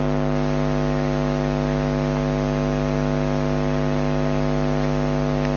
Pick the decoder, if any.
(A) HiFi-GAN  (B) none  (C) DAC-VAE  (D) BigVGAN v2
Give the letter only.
B